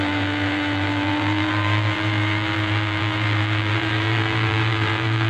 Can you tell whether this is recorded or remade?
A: remade